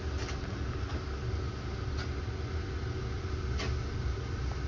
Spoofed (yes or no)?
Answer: no